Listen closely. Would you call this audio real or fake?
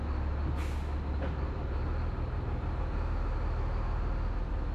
real